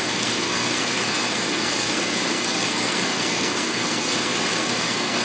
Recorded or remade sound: remade